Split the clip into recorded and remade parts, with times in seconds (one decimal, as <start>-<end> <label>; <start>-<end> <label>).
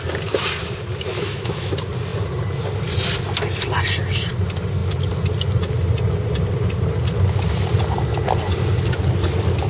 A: 0.0-1.1 recorded; 1.1-1.7 remade; 1.7-9.7 recorded